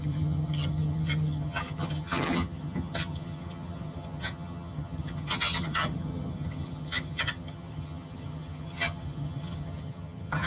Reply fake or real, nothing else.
fake